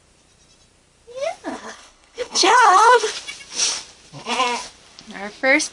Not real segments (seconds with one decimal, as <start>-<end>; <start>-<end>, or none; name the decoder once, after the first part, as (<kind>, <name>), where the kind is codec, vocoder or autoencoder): 1.5-3.1 (codec, HILCodec)